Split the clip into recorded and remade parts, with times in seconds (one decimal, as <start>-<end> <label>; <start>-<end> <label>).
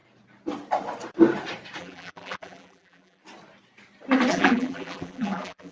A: 0.0-1.8 recorded; 1.8-3.2 remade; 3.2-4.3 recorded; 4.3-5.7 remade